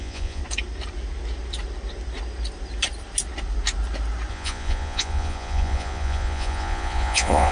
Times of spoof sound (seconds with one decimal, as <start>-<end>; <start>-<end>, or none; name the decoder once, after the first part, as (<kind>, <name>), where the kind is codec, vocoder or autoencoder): 0.0-0.4 (vocoder, Vocos); 4.3-7.5